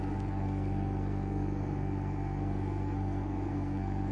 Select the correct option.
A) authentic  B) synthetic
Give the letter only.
B